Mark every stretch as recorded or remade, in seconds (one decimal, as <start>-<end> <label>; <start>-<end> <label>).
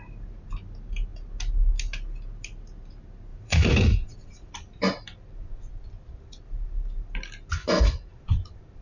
0.0-3.3 recorded; 3.3-4.5 remade; 4.5-7.6 recorded; 7.6-8.2 remade; 8.2-8.8 recorded